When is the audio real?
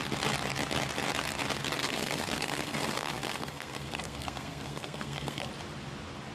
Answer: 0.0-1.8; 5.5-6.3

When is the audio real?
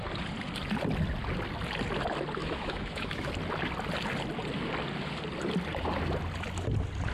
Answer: 0.0-2.4; 3.3-7.1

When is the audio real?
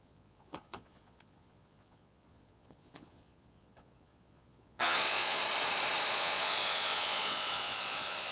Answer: 5.4-6.1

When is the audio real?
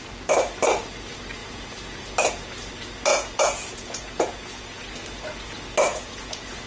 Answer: 0.0-1.4; 2.0-3.1; 4.9-5.9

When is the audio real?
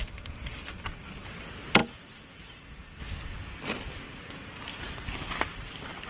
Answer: 1.4-1.8; 3.0-6.1